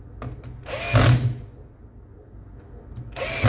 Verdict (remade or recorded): recorded